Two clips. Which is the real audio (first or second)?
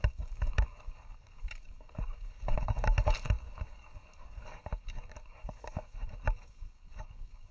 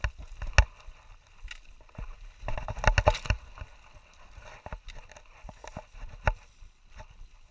second